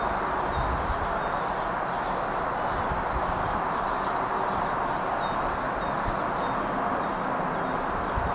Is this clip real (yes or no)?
yes